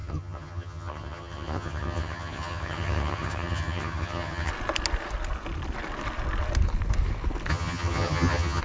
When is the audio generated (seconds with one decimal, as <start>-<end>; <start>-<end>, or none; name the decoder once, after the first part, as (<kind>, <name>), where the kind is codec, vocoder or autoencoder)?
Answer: 0.0-4.5 (vocoder, HiFi-GAN); 7.5-8.6